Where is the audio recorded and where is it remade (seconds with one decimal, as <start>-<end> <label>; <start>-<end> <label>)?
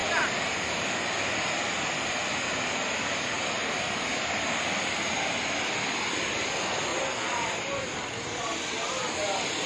0.0-9.7 recorded